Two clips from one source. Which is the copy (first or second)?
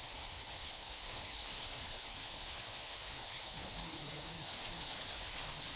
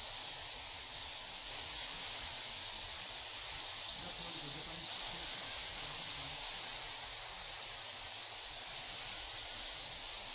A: first